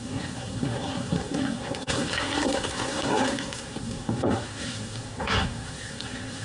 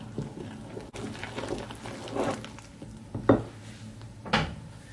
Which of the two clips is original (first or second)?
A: second